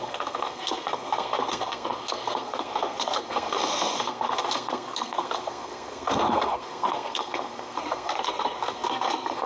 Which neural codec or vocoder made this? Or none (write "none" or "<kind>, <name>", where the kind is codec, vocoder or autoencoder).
codec, SNAC